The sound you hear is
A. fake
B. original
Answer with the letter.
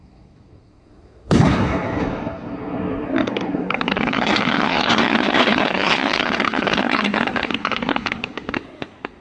A